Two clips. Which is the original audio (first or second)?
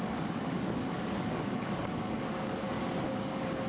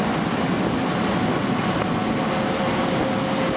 second